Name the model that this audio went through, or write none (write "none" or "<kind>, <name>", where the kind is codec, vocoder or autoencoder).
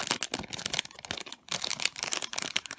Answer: none